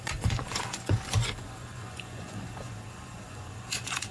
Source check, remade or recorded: remade